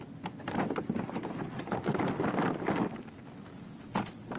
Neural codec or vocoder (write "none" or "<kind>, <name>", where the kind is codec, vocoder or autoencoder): none